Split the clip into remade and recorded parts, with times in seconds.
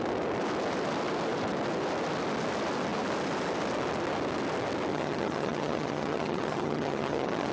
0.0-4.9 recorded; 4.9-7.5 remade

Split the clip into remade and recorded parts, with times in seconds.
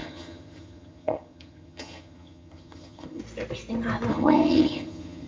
0.0-3.2 remade; 3.2-4.1 recorded; 4.1-5.3 remade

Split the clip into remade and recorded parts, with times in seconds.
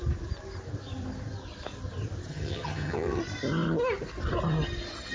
0.0-2.3 recorded; 2.3-3.2 remade; 3.2-5.1 recorded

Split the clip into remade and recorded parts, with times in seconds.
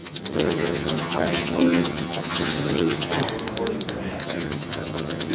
0.0-3.2 remade; 3.2-4.2 recorded; 4.2-5.3 remade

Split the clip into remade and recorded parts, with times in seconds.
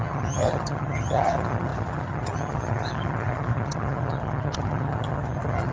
0.0-5.7 remade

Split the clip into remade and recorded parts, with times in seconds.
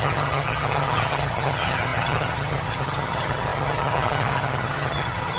0.0-5.4 remade